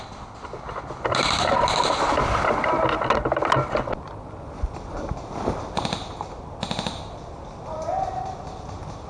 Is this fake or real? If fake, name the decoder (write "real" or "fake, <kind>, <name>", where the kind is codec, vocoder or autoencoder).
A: real